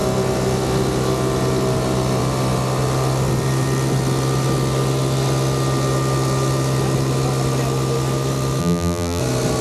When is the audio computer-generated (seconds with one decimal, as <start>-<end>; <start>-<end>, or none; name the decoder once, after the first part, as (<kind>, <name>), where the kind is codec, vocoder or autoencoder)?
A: 8.6-9.2 (vocoder, BigVGAN v2)